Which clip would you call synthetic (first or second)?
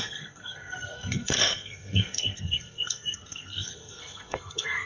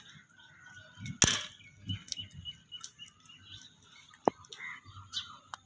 first